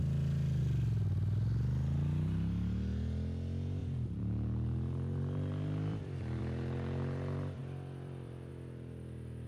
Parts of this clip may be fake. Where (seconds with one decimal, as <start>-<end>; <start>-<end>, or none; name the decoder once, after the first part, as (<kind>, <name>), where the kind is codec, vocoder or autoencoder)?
0.0-0.6 (vocoder, BigVGAN v2); 3.8-6.4; 7.6-8.5